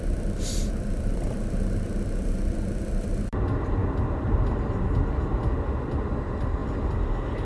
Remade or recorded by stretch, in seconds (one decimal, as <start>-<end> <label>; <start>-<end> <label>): 0.0-7.5 recorded